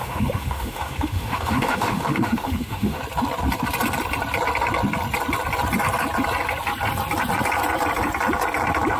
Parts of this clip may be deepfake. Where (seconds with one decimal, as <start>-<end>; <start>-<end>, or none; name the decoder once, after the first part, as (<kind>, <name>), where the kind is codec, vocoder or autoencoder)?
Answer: 0.0-3.0 (autoencoder, DAC-VAE)